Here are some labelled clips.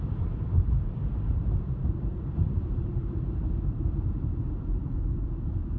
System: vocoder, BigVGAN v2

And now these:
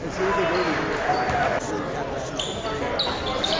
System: none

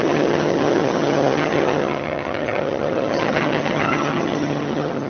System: vocoder, HiFi-GAN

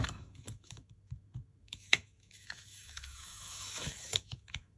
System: autoencoder, DAC-VAE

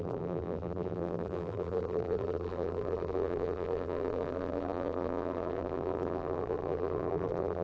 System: vocoder, BigVGAN v2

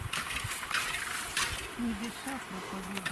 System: none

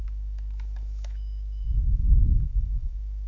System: autoencoder, DAC-VAE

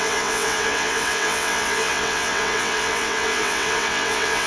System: vocoder, WaveNeXt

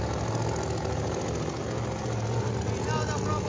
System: none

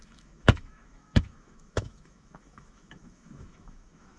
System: autoencoder, DAC-VAE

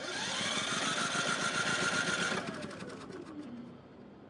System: none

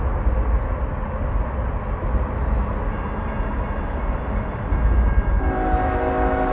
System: none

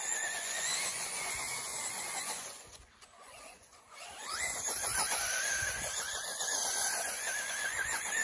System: vocoder, Vocos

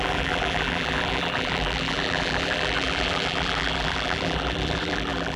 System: vocoder, BigVGAN v2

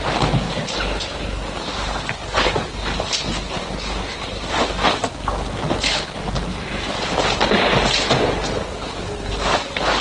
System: none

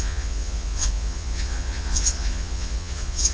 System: vocoder, Vocos